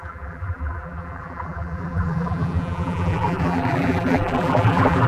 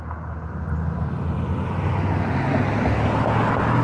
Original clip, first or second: second